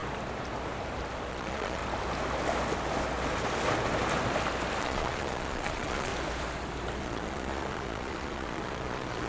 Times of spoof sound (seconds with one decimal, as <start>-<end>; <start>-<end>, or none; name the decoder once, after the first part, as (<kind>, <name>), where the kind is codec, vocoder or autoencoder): 1.3-1.8 (vocoder, Vocos); 4.8-6.1; 7.0-9.3